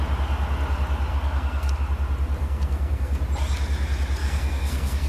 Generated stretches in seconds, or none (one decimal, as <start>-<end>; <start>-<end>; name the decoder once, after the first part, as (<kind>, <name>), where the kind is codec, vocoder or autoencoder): 1.1-1.7 (codec, SNAC); 2.4-3.2; 4.2-5.1